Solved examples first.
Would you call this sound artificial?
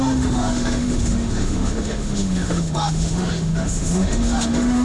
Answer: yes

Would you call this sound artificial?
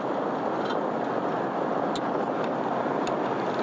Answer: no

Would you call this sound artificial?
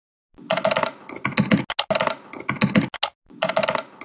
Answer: no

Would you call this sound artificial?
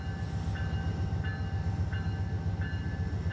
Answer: no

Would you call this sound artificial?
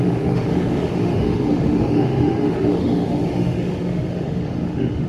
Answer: yes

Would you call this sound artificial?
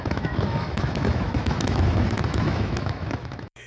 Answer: yes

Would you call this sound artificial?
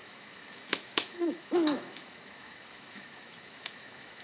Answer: yes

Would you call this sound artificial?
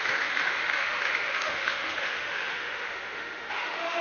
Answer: yes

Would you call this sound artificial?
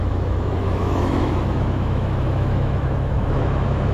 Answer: yes